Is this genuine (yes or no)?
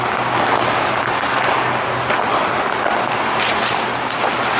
yes